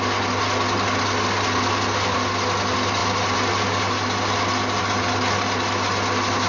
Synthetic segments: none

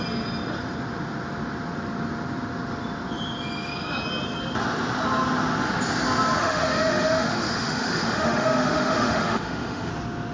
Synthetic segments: 6.4-9.9 (autoencoder, DAC-VAE)